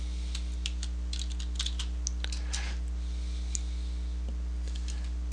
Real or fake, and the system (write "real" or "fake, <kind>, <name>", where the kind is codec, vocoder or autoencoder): real